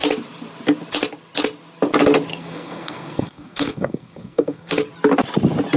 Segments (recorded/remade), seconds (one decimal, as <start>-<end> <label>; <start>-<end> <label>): 0.0-2.3 recorded; 2.3-4.7 remade; 4.7-5.8 recorded